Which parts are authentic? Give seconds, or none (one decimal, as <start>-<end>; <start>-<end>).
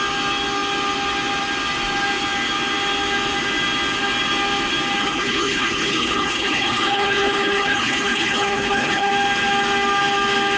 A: 0.0-5.0; 9.1-10.6